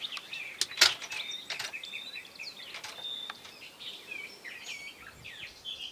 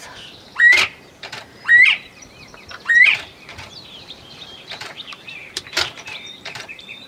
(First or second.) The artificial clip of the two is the second